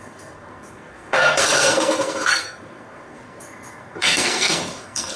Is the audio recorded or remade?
remade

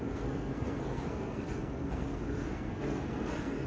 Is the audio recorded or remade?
remade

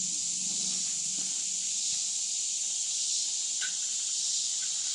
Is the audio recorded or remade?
recorded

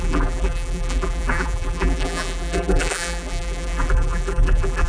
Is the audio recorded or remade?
remade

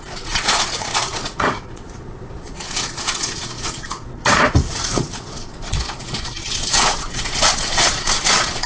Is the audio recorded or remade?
remade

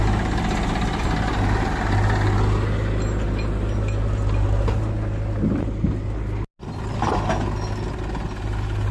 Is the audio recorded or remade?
recorded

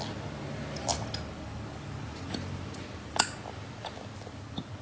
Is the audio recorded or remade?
recorded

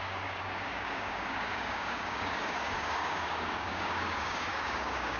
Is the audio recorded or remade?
remade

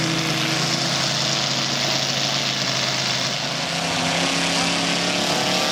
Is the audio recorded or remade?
recorded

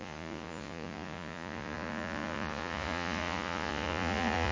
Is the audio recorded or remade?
remade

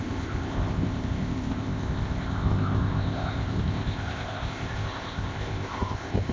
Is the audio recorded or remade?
remade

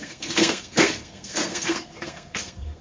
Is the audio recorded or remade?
remade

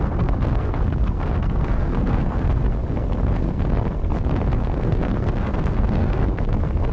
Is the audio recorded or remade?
remade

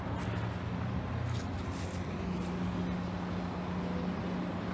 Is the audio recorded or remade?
recorded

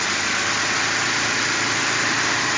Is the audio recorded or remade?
recorded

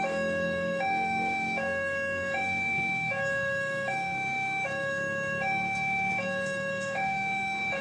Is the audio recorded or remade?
remade